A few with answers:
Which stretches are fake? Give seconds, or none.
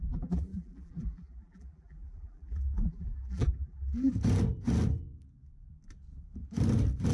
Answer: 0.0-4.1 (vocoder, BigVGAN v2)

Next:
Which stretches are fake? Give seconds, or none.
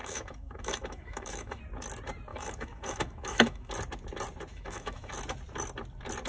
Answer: 0.0-1.6 (autoencoder, DAC-VAE); 2.3-3.7; 4.5-5.1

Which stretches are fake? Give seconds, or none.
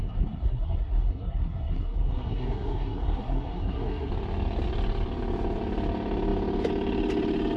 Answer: 0.0-4.1 (codec, SNAC)